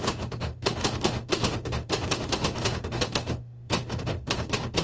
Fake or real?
fake